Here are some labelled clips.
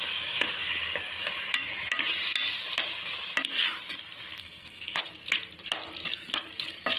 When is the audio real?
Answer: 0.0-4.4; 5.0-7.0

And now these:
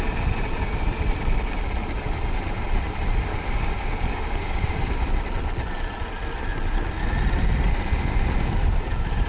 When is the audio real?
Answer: 0.0-3.3; 5.1-9.3

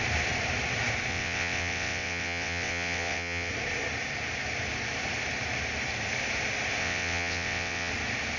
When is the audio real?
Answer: 0.0-1.1; 3.5-6.8; 7.9-8.4